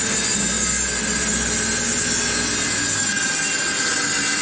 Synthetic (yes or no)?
no